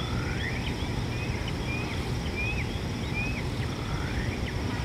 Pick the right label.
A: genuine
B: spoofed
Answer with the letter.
A